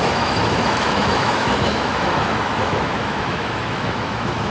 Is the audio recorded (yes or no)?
no